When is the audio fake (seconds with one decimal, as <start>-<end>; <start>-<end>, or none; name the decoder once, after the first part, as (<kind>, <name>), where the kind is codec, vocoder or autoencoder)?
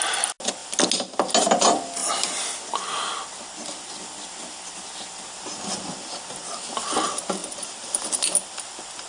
none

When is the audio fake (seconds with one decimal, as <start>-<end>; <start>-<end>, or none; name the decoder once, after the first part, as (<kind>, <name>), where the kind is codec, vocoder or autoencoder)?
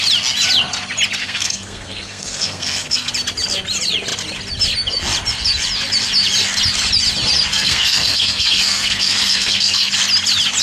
1.2-3.1 (codec, SNAC); 7.5-9.9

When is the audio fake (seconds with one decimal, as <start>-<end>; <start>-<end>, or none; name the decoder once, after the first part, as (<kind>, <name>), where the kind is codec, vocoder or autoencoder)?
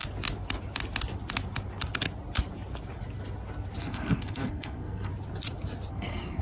3.8-5.1 (codec, SNAC); 5.9-6.4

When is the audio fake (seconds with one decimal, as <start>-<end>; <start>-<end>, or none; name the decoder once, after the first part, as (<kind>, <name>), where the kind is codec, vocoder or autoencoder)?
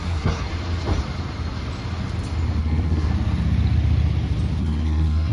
0.0-0.5 (codec, SNAC); 2.6-3.1; 4.6-5.3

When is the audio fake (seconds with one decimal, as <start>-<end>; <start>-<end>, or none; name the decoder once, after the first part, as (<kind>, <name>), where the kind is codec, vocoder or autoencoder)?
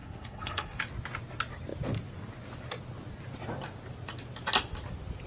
0.0-0.8 (codec, SNAC)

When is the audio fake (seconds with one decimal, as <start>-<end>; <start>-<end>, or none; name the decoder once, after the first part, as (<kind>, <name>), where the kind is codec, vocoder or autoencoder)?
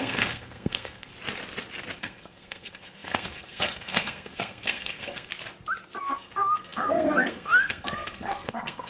0.0-1.1 (codec, SNAC); 2.0-5.3; 6.0-8.9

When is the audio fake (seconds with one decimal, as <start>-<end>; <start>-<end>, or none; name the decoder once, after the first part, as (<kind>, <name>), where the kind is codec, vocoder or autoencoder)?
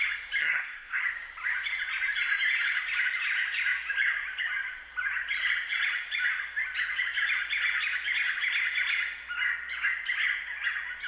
0.4-1.0 (codec, SNAC)